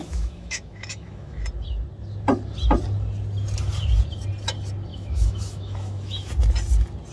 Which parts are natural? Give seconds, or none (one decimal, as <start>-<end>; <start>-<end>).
1.4-4.9; 6.3-7.1